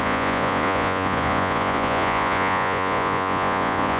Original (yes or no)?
no